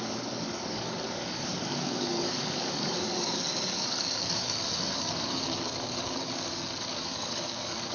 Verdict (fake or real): fake